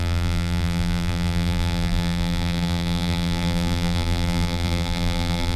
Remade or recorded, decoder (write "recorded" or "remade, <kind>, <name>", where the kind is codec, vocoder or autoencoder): remade, vocoder, BigVGAN v2